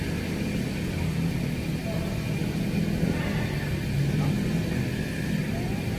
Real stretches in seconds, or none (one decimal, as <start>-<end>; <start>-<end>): 1.8-5.4